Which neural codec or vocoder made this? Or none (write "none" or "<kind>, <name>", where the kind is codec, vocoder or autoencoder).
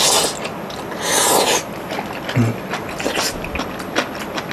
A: none